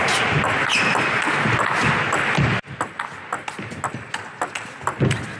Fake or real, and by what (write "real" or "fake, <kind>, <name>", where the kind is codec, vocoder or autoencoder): real